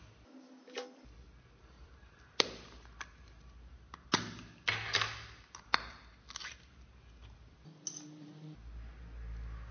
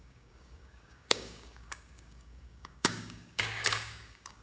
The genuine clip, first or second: first